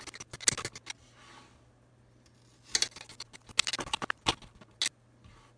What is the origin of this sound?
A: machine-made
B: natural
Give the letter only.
B